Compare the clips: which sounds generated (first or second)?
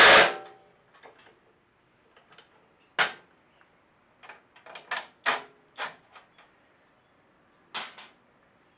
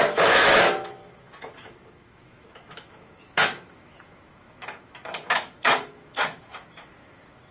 second